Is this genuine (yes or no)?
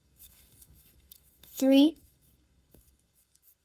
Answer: no